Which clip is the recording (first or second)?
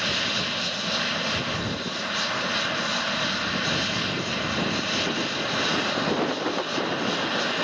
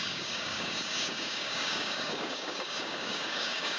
first